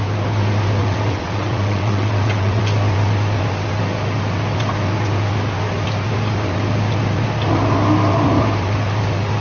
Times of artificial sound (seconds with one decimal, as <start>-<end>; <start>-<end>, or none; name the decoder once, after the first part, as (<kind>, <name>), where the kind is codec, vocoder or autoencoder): 0.8-2.6 (vocoder, WaveNeXt)